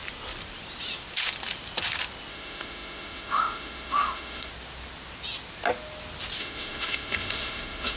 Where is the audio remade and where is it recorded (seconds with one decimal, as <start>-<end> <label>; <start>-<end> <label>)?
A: 0.0-2.3 recorded; 2.3-4.5 remade; 4.5-6.4 recorded; 6.4-8.0 remade

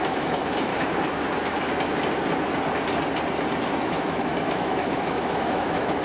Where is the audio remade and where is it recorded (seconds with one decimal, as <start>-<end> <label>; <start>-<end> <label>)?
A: 0.0-0.7 remade; 0.7-3.8 recorded; 3.8-6.0 remade